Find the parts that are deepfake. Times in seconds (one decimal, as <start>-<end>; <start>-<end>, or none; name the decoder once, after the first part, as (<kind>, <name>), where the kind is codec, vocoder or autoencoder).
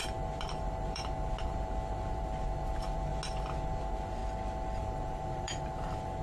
0.0-3.1 (vocoder, BigVGAN v2); 3.8-4.2; 4.8-6.2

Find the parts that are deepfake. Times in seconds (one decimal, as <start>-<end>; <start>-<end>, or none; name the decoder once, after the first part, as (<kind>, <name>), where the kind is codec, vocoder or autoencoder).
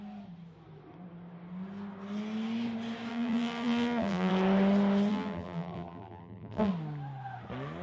3.1-4.3 (vocoder, BigVGAN v2); 5.1-6.7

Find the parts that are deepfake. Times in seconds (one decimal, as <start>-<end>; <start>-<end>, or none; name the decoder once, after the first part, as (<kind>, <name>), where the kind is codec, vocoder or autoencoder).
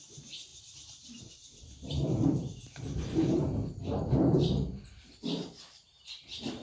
0.0-6.6 (vocoder, BigVGAN v2)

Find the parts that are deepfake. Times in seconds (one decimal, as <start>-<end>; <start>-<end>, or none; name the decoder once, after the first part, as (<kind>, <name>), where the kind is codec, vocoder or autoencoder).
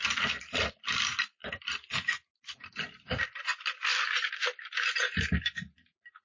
1.4-3.4 (vocoder, BigVGAN v2); 3.9-5.3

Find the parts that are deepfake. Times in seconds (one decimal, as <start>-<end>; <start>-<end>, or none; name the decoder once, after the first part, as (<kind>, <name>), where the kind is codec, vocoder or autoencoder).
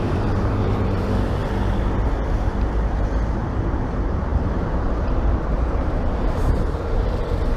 0.0-1.4 (vocoder, BigVGAN v2); 3.7-7.6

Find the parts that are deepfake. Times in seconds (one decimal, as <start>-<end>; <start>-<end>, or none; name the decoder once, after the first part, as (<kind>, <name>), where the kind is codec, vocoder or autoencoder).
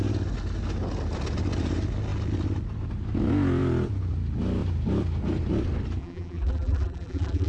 6.0-7.5 (vocoder, BigVGAN v2)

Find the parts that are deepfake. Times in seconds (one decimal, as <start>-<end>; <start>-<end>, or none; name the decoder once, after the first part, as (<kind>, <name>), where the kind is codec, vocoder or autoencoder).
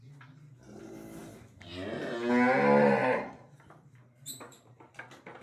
1.2-2.0 (vocoder, BigVGAN v2); 3.0-4.7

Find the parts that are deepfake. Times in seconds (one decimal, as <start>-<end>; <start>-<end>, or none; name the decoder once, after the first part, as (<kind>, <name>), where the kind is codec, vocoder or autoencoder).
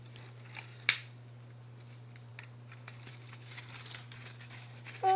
none